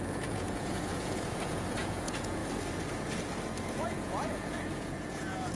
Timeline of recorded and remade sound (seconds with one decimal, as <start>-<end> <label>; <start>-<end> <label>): 0.0-2.4 remade; 2.4-3.7 recorded; 3.7-5.5 remade